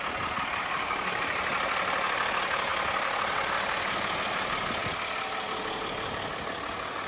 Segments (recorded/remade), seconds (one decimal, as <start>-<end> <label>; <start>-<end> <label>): 0.0-0.6 recorded; 0.6-1.2 remade; 1.2-7.1 recorded